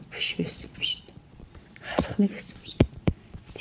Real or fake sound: fake